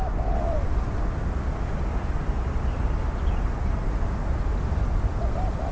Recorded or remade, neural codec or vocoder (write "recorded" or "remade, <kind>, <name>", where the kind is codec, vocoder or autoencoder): recorded